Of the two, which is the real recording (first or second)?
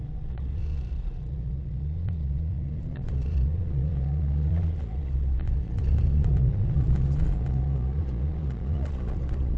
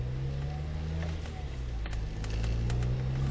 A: second